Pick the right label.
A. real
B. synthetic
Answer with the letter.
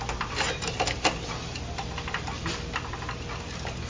A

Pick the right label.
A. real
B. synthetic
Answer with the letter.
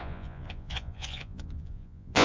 B